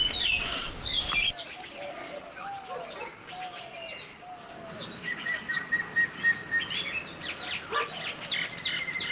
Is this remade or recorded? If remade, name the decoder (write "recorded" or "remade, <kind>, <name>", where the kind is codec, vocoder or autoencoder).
recorded